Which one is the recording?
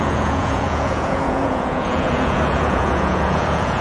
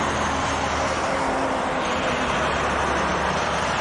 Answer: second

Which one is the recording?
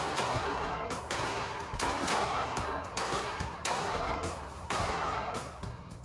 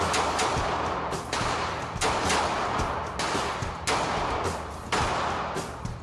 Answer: second